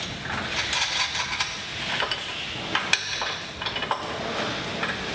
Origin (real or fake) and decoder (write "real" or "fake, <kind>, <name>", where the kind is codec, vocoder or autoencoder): real